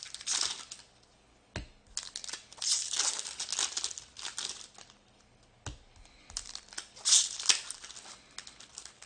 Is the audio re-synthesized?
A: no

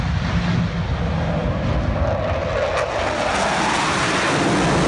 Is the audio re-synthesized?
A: no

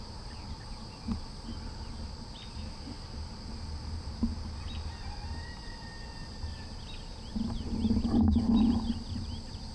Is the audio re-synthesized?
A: no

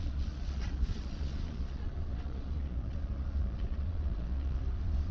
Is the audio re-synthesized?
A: yes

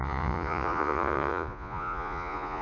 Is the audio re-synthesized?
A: yes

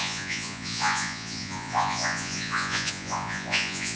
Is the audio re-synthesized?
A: yes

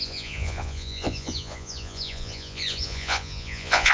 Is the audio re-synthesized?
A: yes